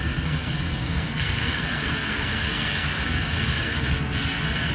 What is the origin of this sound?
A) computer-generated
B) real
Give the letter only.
A